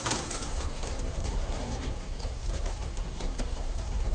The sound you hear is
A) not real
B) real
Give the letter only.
A